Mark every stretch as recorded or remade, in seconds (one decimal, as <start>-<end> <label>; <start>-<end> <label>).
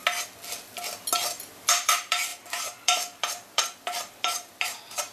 0.0-1.7 recorded; 1.7-5.1 remade